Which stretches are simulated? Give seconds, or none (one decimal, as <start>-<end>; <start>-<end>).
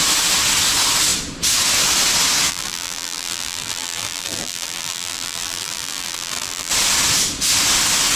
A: 2.5-6.7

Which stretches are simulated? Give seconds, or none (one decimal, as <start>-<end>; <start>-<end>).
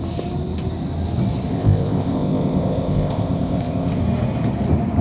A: 1.5-4.0